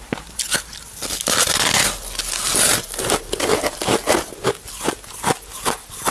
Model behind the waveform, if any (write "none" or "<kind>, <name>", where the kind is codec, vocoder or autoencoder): none